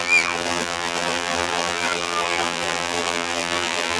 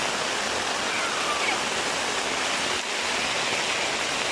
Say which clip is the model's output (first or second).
first